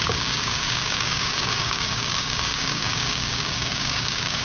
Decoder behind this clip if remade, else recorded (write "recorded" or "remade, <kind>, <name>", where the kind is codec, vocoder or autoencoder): remade, codec, DAC